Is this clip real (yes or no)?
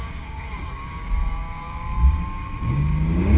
no